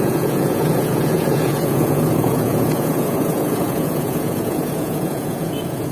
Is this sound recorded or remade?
remade